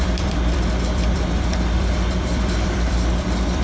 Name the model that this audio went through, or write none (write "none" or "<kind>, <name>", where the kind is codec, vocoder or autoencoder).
vocoder, BigVGAN v2